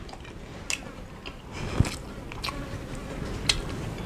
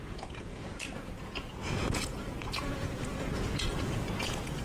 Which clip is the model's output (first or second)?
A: second